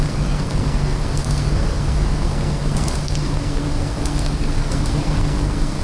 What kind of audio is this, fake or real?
fake